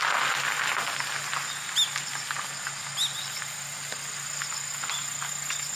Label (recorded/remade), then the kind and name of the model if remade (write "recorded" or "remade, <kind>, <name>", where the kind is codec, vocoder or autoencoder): recorded